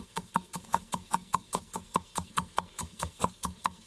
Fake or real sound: fake